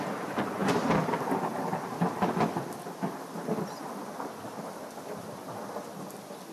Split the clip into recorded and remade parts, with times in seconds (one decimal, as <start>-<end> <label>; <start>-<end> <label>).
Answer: 0.0-6.5 recorded